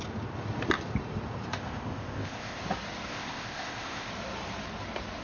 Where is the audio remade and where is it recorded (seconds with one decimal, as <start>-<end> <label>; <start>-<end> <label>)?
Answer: 0.0-1.5 recorded; 1.5-2.6 remade; 2.6-3.1 recorded; 3.1-4.1 remade; 4.1-5.2 recorded